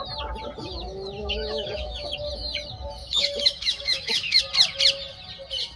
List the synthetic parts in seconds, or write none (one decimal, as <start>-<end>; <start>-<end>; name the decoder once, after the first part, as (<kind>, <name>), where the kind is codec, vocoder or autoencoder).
1.2-2.1 (autoencoder, DAC-VAE); 3.0-4.4